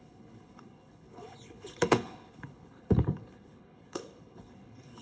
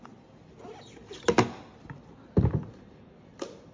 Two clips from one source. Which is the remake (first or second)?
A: first